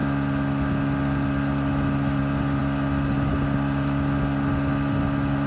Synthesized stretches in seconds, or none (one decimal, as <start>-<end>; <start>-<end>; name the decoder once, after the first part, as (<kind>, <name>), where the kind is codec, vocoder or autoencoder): none